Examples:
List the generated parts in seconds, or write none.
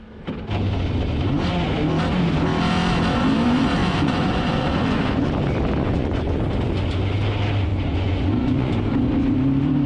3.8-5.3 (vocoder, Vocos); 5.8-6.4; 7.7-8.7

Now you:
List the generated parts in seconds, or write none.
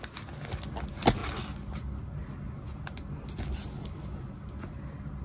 none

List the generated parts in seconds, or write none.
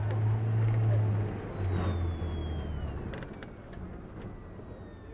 none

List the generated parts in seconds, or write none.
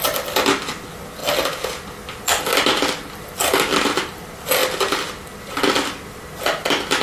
none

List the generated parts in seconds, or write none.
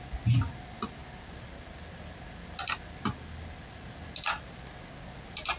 none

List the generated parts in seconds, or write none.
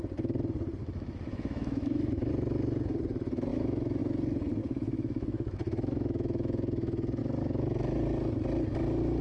0.8-2.3 (autoencoder, DAC-VAE); 3.5-4.0; 4.6-7.2